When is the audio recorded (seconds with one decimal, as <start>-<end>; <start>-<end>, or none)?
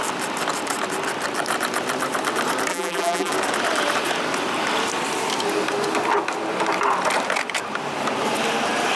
0.0-2.7; 3.3-9.0